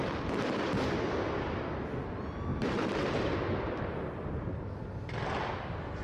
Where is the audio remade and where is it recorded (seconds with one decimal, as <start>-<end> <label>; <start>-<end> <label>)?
0.0-2.5 recorded; 2.5-3.4 remade; 3.4-6.0 recorded